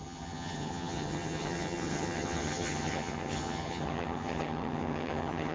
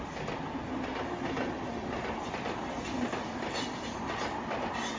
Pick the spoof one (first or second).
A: first